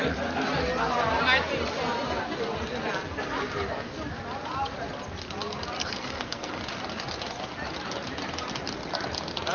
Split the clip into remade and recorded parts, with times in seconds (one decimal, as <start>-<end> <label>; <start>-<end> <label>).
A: 0.0-5.8 recorded; 5.8-6.6 remade; 6.6-9.5 recorded